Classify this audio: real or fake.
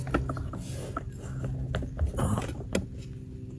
real